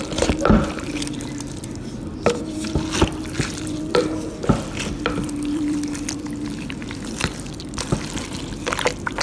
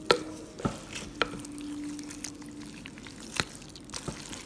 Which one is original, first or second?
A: second